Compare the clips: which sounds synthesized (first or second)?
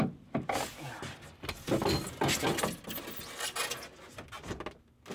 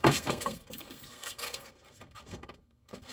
second